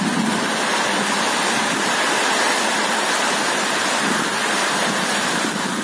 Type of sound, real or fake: real